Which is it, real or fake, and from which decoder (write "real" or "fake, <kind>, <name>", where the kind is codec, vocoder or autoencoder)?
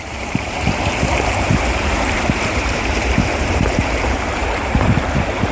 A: fake, vocoder, BigVGAN v2